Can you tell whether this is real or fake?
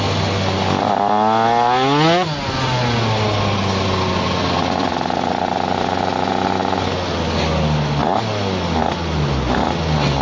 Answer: real